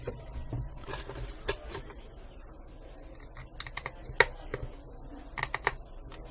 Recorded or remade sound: recorded